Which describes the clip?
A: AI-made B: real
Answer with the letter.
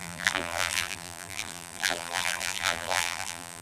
A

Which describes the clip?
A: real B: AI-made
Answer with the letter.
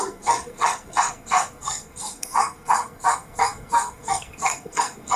B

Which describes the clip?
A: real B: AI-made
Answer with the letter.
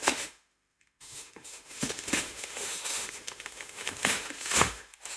B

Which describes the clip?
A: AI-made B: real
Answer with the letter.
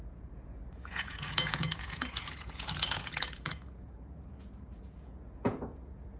A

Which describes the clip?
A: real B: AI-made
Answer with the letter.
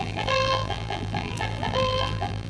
B